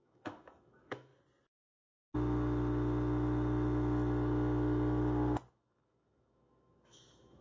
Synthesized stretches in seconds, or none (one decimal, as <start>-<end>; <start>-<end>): 0.0-1.1; 5.5-7.4

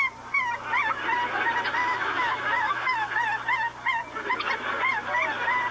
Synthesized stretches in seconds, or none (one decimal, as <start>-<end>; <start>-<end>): 1.8-3.1

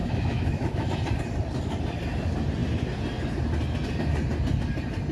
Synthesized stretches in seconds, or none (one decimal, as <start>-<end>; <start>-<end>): 0.0-0.9

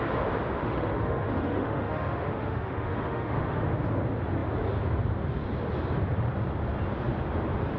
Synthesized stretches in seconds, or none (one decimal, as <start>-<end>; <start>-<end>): 0.6-3.6

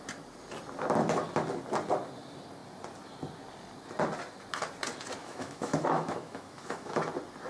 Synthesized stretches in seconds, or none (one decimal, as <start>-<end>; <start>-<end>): 5.2-7.0

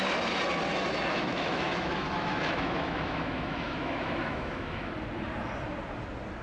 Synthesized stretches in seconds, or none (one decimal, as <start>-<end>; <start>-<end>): 1.1-4.9

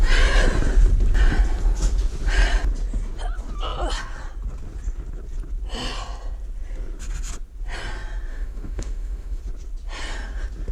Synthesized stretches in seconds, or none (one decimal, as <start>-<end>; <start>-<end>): 8.3-9.4

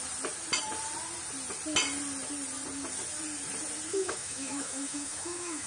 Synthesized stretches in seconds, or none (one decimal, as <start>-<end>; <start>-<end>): 3.9-5.7